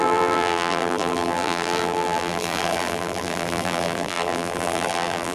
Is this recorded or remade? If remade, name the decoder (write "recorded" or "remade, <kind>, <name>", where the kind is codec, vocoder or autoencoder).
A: remade, vocoder, BigVGAN v2